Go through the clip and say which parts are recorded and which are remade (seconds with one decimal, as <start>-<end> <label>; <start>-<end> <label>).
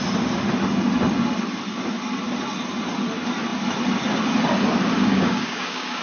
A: 0.0-5.0 recorded; 5.0-6.0 remade